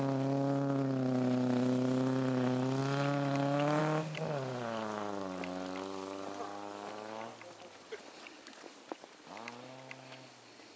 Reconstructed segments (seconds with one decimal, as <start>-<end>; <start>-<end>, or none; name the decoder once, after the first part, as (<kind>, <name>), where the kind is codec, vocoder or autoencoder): none